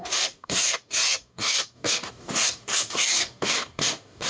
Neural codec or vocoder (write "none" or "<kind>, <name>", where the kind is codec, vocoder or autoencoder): codec, DAC